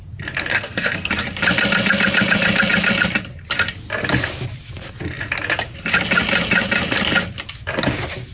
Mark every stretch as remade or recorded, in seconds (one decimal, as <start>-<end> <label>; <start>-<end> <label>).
0.0-0.5 recorded; 0.5-1.1 remade; 1.1-8.3 recorded